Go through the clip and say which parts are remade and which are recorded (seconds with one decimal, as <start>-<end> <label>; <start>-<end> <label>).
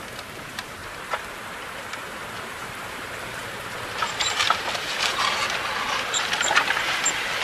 0.0-0.8 recorded; 0.8-5.2 remade; 5.2-7.4 recorded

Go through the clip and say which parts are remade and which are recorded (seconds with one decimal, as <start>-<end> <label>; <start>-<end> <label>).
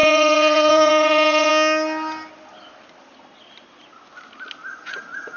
0.0-1.5 remade; 1.5-4.7 recorded; 4.7-5.4 remade